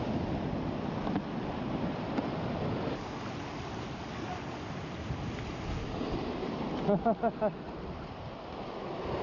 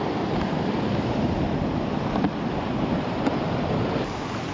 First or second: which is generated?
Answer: second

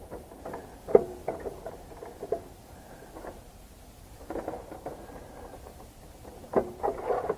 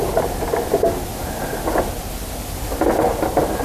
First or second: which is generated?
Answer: first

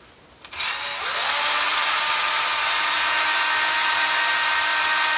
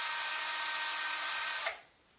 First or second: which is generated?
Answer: second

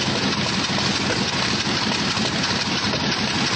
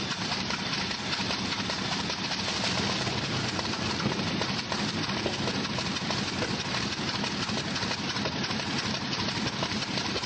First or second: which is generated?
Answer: second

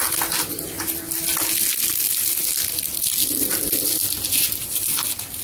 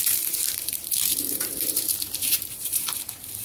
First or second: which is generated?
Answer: second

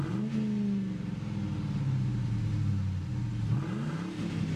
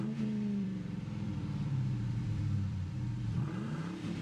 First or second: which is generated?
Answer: second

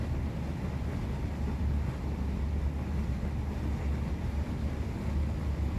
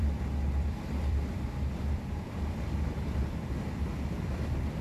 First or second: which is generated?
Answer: second